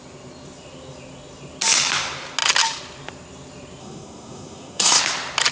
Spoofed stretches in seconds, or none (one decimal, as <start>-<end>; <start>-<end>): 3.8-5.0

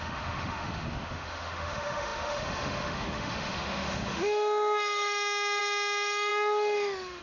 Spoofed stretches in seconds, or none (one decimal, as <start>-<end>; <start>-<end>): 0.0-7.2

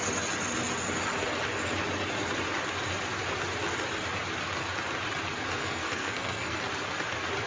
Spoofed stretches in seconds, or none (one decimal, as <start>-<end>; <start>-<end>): 5.6-6.6

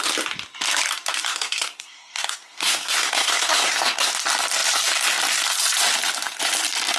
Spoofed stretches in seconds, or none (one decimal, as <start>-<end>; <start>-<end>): 1.3-4.1

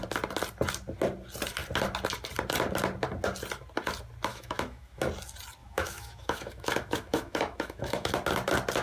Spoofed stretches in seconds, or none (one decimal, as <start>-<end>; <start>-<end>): 4.3-5.0; 5.6-8.1